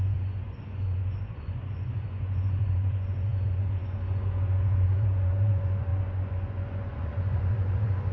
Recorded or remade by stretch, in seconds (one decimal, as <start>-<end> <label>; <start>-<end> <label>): 0.0-8.1 remade